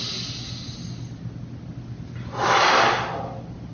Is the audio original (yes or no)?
yes